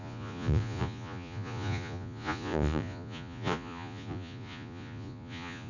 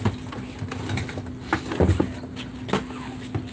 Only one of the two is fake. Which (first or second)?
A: first